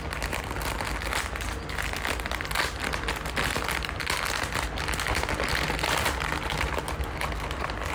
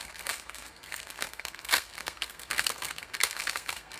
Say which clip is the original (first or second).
first